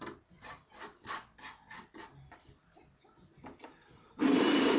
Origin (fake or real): fake